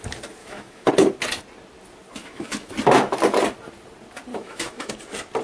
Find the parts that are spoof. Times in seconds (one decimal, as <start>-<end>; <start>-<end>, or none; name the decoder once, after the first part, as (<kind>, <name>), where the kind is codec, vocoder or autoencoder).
0.4-0.9 (autoencoder, DAC-VAE); 2.2-2.7; 4.3-4.9